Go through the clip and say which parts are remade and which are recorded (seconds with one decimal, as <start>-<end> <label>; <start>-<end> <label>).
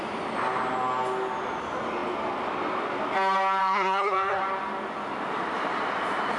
0.0-3.6 recorded; 3.6-4.4 remade; 4.4-6.4 recorded